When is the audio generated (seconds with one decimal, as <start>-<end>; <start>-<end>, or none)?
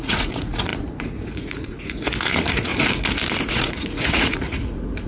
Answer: 0.0-2.7; 3.4-5.1